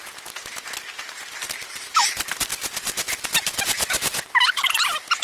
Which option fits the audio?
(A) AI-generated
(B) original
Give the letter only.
B